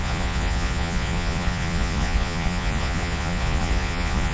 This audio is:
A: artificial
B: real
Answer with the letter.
A